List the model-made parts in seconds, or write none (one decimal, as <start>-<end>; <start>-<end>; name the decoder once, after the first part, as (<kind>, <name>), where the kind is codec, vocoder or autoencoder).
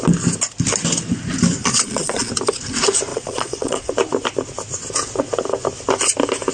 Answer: 1.6-2.3 (vocoder, Vocos); 3.1-3.9